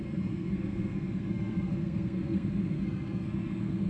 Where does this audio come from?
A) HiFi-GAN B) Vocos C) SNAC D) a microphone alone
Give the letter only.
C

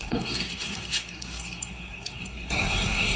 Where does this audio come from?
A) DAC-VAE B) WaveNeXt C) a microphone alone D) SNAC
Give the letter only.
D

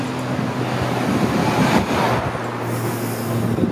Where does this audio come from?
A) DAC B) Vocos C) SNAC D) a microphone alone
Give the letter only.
D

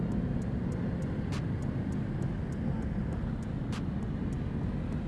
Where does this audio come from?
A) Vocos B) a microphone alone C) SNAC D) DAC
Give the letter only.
B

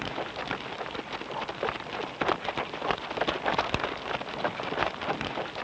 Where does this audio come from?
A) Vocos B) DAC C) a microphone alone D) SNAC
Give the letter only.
C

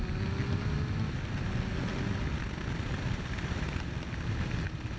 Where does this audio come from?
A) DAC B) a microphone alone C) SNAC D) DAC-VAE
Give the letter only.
B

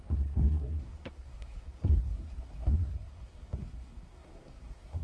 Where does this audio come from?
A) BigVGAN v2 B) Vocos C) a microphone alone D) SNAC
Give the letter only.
D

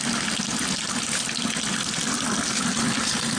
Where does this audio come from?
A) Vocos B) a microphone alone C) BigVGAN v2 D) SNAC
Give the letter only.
B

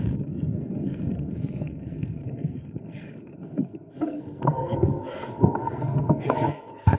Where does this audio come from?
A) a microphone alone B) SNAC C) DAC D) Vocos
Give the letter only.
B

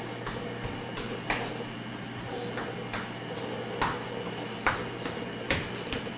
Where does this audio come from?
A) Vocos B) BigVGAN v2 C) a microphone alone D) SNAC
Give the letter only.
C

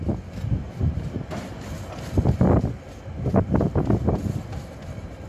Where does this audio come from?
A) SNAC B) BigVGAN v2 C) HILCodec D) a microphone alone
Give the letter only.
D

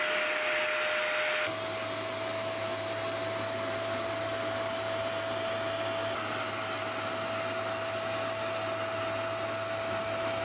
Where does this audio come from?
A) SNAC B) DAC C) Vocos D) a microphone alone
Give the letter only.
D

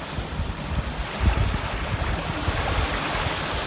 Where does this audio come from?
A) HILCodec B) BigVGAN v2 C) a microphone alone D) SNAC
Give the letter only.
C